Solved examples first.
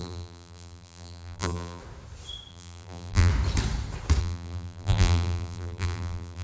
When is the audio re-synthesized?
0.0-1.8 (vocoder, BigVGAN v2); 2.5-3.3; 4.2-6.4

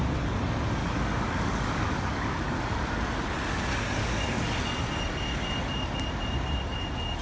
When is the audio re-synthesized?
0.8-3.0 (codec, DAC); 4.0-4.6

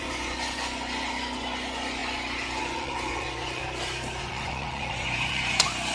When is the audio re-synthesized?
0.0-3.6 (vocoder, Vocos); 4.2-5.9